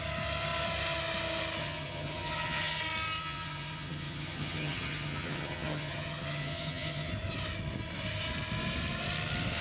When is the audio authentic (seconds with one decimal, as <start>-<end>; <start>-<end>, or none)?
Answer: 0.0-1.6; 2.8-3.2; 7.1-9.6